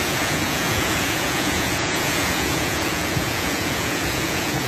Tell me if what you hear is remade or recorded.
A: remade